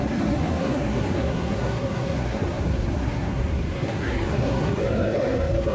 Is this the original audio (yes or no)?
no